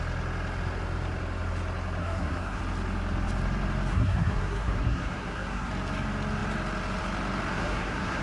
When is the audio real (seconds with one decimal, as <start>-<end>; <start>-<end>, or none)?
0.0-2.0; 2.6-3.9; 5.7-7.5